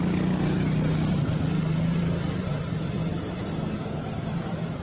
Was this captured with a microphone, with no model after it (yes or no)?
yes